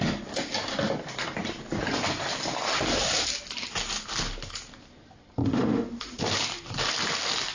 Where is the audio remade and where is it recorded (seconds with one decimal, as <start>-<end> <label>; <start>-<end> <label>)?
0.0-5.4 recorded; 5.4-6.2 remade; 6.2-7.5 recorded